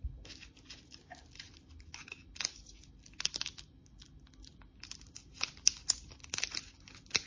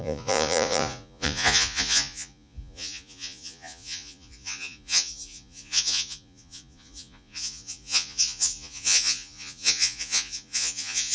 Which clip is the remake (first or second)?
second